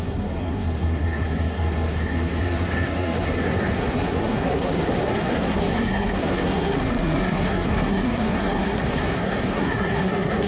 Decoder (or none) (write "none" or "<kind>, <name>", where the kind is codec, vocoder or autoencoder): codec, SNAC